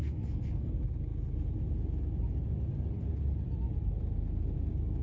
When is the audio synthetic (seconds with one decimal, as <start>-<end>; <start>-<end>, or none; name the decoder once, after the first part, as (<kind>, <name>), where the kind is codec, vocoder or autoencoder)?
0.0-0.7 (codec, SNAC)